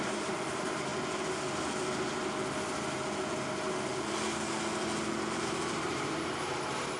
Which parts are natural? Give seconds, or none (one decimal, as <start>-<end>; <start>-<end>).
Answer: 0.9-3.5; 3.9-5.7